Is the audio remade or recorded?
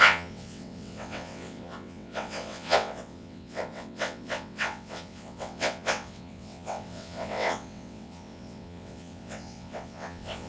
remade